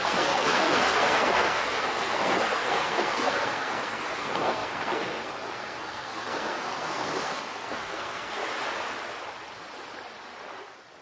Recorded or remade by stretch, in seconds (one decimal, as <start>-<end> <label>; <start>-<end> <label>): 0.0-8.4 remade; 8.4-11.0 recorded